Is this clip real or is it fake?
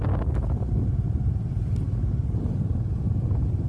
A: real